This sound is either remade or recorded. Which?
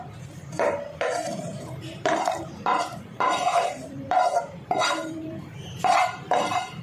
remade